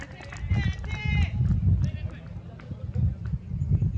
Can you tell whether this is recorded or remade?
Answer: recorded